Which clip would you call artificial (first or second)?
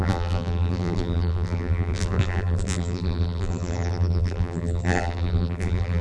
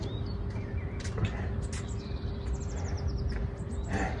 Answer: first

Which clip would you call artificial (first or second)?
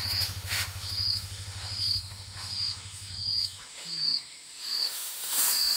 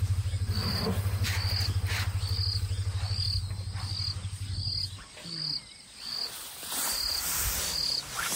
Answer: first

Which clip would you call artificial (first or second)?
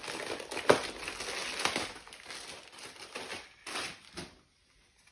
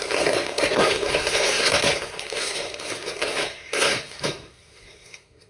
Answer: second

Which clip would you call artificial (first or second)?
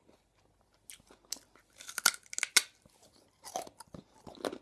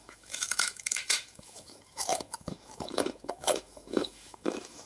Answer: second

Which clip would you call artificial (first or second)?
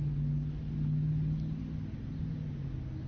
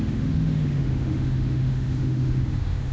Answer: second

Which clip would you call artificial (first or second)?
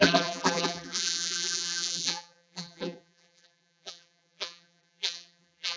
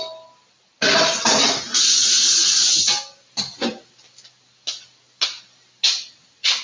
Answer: first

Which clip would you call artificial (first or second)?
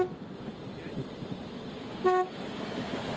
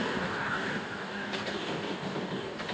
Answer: second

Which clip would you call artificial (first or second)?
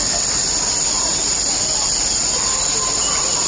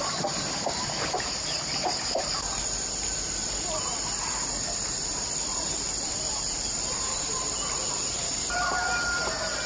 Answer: second